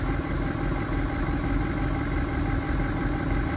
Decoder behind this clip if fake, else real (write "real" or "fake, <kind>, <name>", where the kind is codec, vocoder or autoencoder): real